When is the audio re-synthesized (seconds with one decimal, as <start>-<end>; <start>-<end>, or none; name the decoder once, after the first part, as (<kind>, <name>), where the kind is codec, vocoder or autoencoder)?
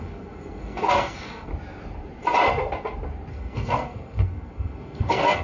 0.0-1.5 (codec, SNAC); 3.3-5.4